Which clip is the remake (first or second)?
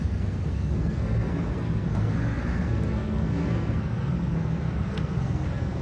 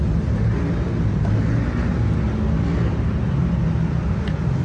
first